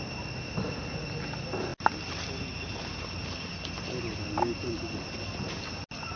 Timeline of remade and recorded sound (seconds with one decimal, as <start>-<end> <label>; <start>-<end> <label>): 0.0-6.2 recorded